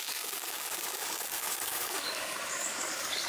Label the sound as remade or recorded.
remade